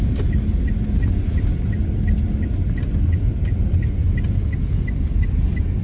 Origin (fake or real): real